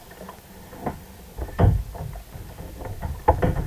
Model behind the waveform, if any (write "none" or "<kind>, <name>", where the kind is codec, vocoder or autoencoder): none